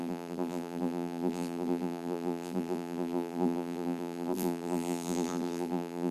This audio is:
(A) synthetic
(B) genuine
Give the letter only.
A